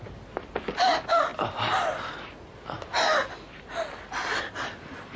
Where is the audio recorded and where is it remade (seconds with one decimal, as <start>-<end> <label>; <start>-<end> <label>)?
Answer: 0.0-5.2 recorded